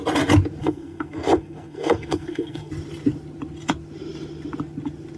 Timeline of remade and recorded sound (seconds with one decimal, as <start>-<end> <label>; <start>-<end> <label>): 0.0-0.6 recorded; 0.6-2.7 remade; 2.7-5.2 recorded